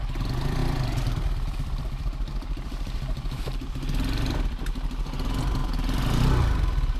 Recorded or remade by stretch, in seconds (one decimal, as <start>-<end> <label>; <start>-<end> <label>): 0.0-5.6 remade; 5.6-6.2 recorded; 6.2-7.0 remade